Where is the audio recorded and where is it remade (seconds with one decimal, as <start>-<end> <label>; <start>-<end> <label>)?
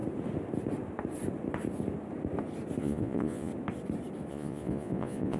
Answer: 0.0-2.8 recorded; 2.8-3.5 remade; 3.5-4.3 recorded; 4.3-5.4 remade